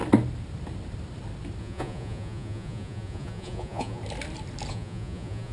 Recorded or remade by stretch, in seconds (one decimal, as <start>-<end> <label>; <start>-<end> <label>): 0.0-1.6 recorded; 1.6-4.0 remade; 4.0-4.7 recorded; 4.7-5.5 remade